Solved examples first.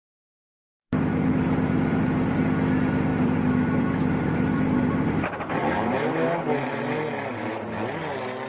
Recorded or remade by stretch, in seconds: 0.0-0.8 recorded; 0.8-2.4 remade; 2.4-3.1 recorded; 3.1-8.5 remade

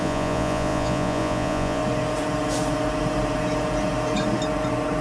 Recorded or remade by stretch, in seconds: 0.0-1.8 remade; 1.8-5.0 recorded

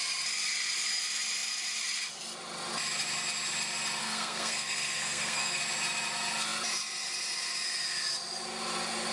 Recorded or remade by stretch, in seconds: 0.0-4.0 recorded; 4.0-5.6 remade; 5.6-9.1 recorded

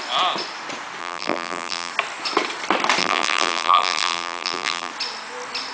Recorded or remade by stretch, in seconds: 0.0-1.0 recorded; 1.0-1.9 remade; 1.9-3.0 recorded; 3.0-4.9 remade; 4.9-5.7 recorded